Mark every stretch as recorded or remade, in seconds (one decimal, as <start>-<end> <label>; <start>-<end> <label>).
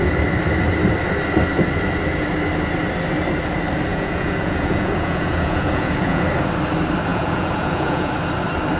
0.0-3.9 recorded; 3.9-6.2 remade; 6.2-7.1 recorded; 7.1-8.1 remade; 8.1-8.8 recorded